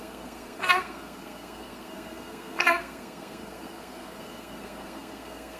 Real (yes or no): no